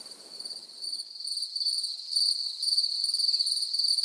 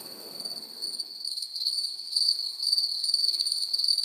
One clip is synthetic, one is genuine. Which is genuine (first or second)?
first